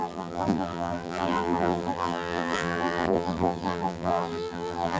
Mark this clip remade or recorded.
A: remade